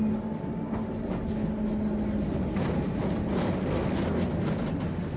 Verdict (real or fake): real